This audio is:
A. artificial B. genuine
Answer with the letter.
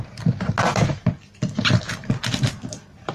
B